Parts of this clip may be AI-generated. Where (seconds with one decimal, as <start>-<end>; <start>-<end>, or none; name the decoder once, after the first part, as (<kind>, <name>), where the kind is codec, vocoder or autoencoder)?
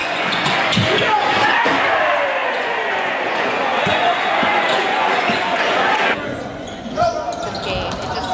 0.0-1.1 (vocoder, Vocos); 2.4-7.1